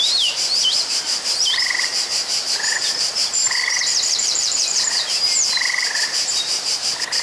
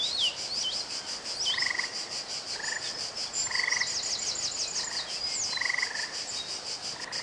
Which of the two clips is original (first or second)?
second